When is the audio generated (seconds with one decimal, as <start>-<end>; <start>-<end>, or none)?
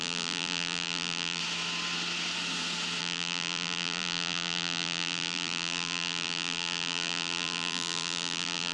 0.0-1.4; 3.0-8.7